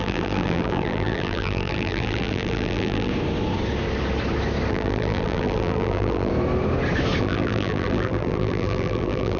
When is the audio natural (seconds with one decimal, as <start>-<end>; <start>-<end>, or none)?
3.1-4.7; 6.3-7.2